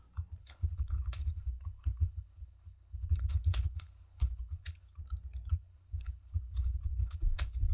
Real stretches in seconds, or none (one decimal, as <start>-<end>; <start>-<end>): 0.0-0.4; 5.0-5.5